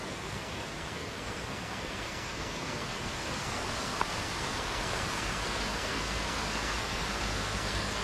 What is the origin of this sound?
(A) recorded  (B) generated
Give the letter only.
B